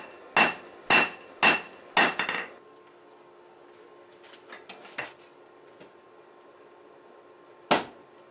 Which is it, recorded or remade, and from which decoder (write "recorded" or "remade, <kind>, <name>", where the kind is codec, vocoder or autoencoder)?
recorded